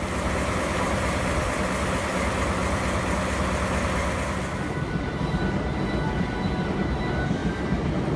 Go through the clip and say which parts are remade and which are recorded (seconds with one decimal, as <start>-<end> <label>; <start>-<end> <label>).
0.0-8.2 recorded